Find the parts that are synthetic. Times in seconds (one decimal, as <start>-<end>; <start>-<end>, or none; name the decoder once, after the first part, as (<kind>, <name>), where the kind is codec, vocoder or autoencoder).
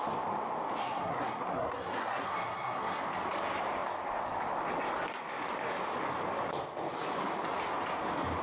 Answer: 0.8-3.0 (codec, SNAC)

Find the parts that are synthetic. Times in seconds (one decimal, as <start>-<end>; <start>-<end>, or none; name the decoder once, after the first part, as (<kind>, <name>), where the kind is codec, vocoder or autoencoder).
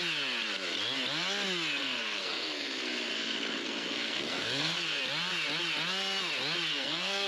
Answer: 1.8-5.0 (codec, SNAC); 6.7-7.3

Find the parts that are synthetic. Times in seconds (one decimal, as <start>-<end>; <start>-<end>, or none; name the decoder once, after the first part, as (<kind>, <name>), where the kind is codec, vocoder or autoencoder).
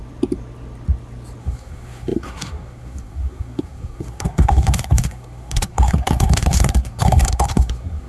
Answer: 1.4-8.1 (codec, SNAC)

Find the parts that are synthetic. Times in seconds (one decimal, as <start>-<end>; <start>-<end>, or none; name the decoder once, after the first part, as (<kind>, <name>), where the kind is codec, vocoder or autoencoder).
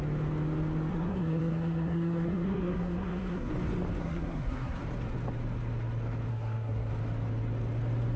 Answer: 0.9-3.5 (codec, SNAC); 4.0-4.8; 6.3-6.9